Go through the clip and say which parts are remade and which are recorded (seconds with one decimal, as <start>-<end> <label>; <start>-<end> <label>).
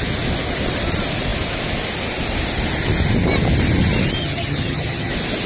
0.0-4.2 recorded; 4.2-5.1 remade; 5.1-5.5 recorded